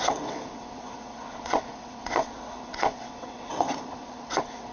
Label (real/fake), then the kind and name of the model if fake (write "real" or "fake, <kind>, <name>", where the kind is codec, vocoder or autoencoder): fake, vocoder, WaveNeXt